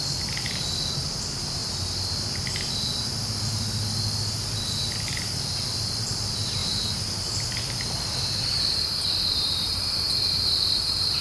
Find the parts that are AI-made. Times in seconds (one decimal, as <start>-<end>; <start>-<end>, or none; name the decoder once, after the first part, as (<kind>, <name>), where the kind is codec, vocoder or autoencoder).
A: 0.0-1.6 (vocoder, BigVGAN v2); 5.5-6.6; 7.6-11.2